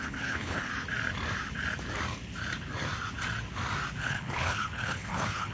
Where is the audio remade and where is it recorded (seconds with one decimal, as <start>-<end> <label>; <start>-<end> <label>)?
0.0-0.7 remade; 0.7-4.0 recorded; 4.0-5.5 remade